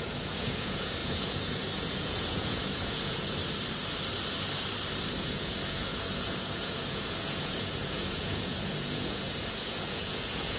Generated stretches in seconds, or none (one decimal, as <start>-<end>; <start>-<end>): 0.0-3.4; 5.2-10.6